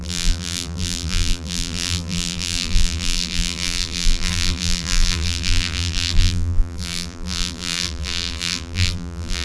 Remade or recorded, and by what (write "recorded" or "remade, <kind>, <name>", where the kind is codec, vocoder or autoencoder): remade, vocoder, BigVGAN v2